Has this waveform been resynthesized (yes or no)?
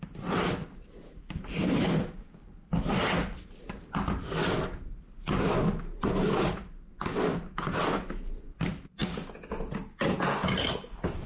no